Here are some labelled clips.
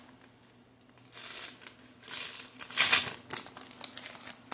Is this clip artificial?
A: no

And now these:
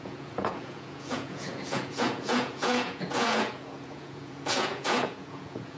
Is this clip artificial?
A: yes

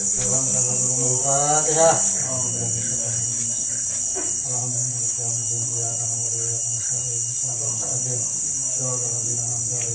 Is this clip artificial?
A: no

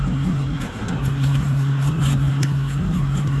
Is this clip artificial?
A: yes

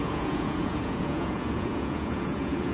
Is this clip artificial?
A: yes